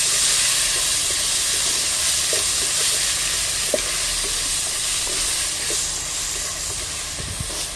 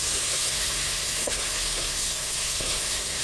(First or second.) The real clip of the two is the first